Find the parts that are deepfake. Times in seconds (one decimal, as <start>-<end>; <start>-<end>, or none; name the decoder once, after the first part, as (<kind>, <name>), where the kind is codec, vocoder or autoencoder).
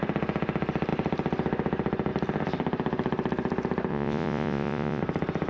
3.9-5.0 (vocoder, Vocos)